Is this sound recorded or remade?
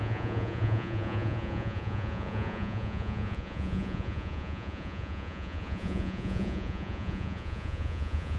remade